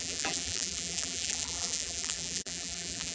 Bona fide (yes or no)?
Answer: no